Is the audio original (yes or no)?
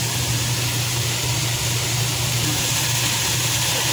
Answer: yes